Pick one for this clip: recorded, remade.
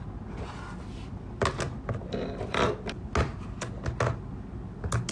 recorded